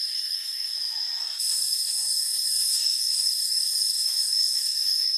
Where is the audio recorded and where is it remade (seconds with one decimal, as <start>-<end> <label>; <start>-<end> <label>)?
0.0-0.7 remade; 0.7-1.2 recorded; 1.2-5.2 remade